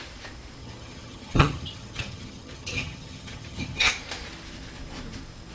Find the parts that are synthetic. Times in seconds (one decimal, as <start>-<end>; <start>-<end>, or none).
0.6-3.9